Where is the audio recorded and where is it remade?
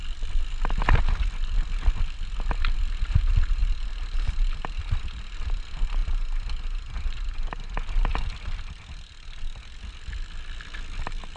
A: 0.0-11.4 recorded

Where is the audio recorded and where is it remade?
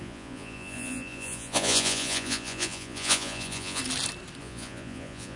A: 0.0-3.8 remade; 3.8-4.4 recorded; 4.4-5.4 remade